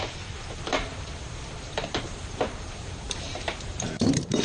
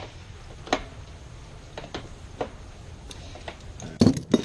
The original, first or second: second